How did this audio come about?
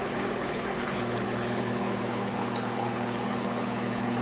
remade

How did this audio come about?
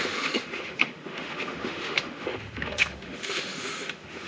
remade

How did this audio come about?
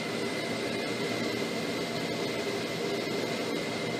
recorded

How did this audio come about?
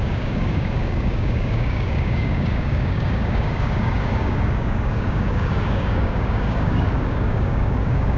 remade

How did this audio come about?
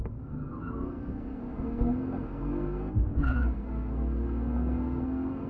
remade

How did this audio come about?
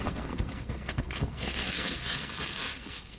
remade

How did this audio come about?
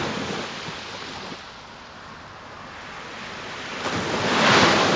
recorded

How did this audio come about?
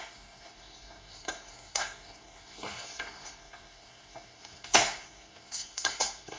remade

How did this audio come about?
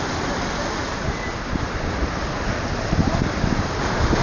recorded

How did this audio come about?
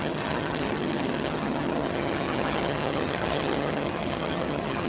remade